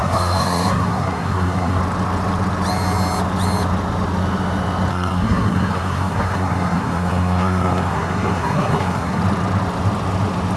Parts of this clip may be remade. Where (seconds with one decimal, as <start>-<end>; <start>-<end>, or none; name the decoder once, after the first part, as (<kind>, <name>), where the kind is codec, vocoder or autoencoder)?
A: 0.0-1.8 (codec, SNAC); 4.9-9.2